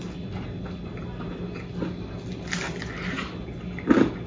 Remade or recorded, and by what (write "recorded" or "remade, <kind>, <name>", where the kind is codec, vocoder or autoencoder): recorded